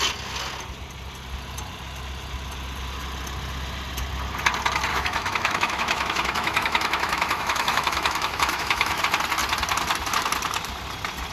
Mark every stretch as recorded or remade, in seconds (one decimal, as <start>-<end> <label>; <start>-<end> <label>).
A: 0.0-4.9 recorded; 4.9-9.0 remade; 9.0-11.3 recorded